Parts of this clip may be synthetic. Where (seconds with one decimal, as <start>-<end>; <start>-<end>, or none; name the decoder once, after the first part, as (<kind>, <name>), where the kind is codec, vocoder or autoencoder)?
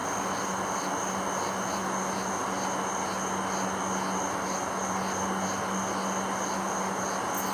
none